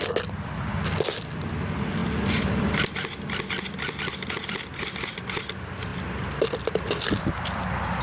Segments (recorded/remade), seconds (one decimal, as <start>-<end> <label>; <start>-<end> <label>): 0.0-8.0 recorded

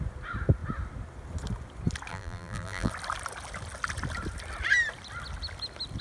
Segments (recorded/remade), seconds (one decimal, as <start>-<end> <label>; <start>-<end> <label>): 0.0-2.1 recorded; 2.1-2.9 remade; 2.9-6.0 recorded

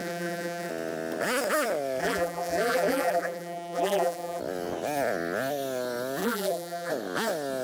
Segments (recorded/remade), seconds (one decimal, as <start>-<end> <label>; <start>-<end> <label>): 0.0-0.7 remade; 0.7-2.0 recorded; 2.0-4.4 remade; 4.4-6.2 recorded; 6.2-6.9 remade; 6.9-7.6 recorded

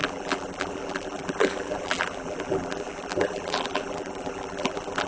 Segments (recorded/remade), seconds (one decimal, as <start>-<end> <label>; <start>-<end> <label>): 0.0-5.1 remade

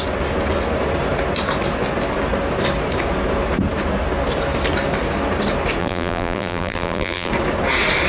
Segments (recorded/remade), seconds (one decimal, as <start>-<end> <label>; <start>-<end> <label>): 0.0-5.8 recorded; 5.8-7.3 remade; 7.3-8.1 recorded

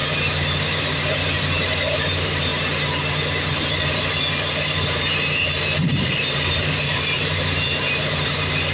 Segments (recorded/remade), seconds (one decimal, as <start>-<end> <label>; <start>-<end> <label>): 0.0-0.6 recorded; 0.6-2.5 remade; 2.5-3.5 recorded; 3.5-8.7 remade

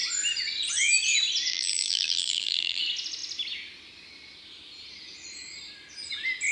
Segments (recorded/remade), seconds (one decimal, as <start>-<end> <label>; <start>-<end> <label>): 0.0-1.5 recorded; 1.5-2.8 remade; 2.8-6.5 recorded